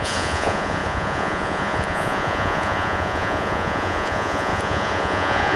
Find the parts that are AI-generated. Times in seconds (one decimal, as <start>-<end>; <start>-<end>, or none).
0.0-5.6